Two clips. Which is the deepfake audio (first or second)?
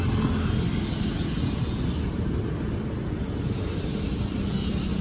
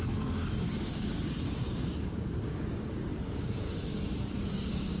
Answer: second